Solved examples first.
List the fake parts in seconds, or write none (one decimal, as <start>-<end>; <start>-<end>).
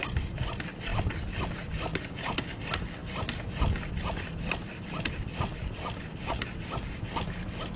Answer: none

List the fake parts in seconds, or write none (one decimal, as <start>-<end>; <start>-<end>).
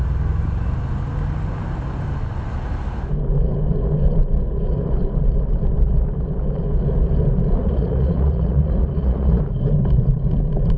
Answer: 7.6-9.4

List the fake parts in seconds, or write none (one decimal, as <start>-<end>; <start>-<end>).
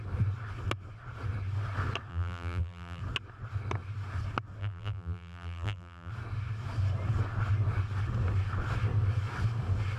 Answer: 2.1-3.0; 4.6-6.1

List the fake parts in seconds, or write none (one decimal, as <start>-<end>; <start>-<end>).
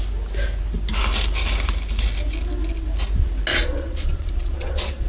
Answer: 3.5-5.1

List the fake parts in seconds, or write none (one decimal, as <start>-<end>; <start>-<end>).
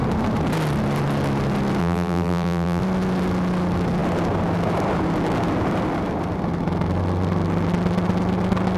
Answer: 1.8-2.8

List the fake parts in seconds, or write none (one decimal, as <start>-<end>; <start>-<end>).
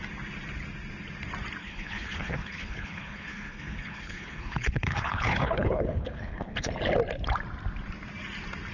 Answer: 1.6-6.7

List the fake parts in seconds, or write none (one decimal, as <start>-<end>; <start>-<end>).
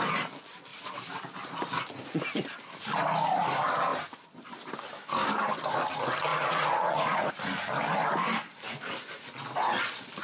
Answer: 6.3-7.3